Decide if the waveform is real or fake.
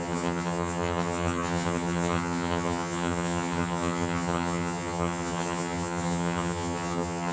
fake